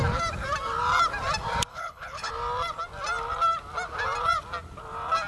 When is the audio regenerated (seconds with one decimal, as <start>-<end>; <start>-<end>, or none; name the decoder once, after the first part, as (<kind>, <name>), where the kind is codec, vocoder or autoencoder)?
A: 1.7-2.3 (codec, HILCodec)